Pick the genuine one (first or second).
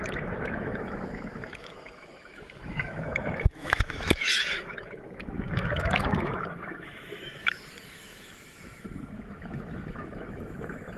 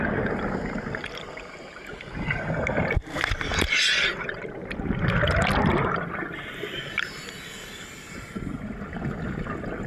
second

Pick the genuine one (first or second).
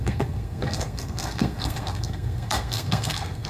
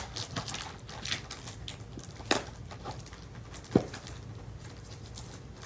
second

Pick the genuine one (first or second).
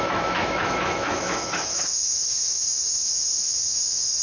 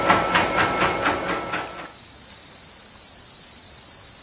second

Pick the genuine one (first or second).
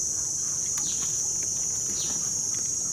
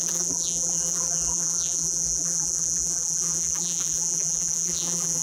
first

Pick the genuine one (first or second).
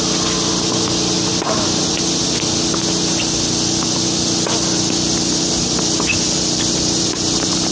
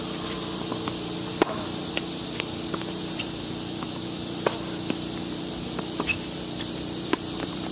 first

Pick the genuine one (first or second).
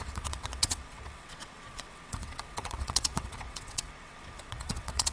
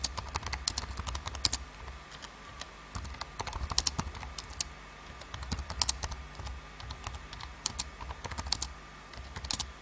second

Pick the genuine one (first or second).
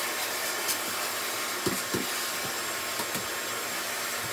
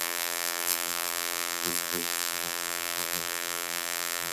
first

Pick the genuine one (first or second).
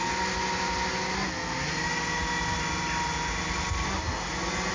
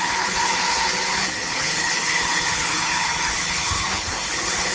first